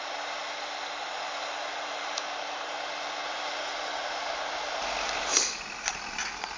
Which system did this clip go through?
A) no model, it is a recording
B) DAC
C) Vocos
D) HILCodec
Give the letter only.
A